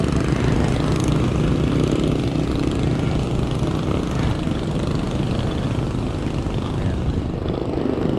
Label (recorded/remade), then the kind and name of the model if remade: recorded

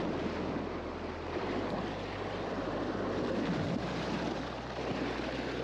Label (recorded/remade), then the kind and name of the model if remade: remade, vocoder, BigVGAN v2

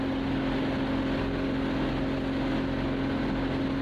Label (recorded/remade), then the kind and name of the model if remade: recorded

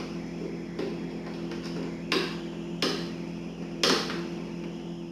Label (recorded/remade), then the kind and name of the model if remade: recorded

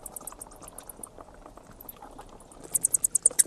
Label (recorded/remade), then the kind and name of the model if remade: recorded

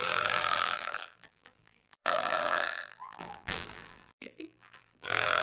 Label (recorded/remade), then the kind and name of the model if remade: remade, vocoder, BigVGAN v2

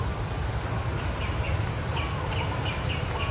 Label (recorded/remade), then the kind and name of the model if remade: recorded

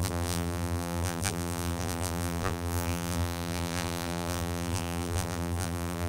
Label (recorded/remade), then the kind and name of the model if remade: remade, vocoder, BigVGAN v2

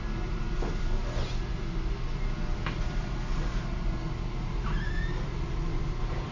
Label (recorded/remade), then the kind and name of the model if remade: recorded